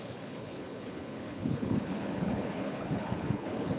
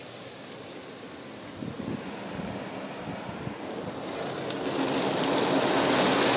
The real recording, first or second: second